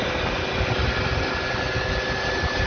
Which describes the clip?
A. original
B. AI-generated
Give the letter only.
A